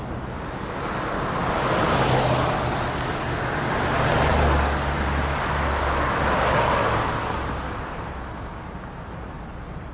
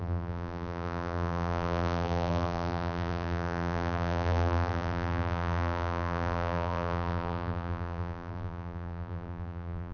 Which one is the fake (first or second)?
second